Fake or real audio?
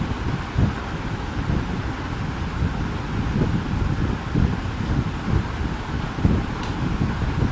real